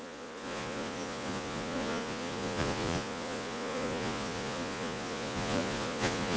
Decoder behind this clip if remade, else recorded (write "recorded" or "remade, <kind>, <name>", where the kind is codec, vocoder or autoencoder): remade, vocoder, Vocos